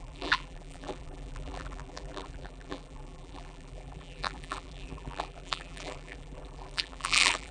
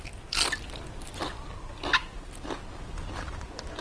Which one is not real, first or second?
first